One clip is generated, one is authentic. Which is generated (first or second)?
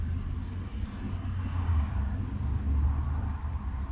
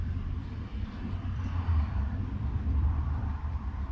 second